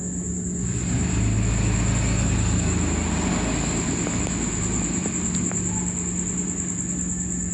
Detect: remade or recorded recorded